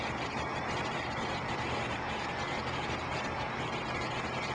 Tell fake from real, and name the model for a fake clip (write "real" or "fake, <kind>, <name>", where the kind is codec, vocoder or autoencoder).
fake, vocoder, BigVGAN v2